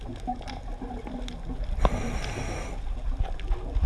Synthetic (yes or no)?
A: no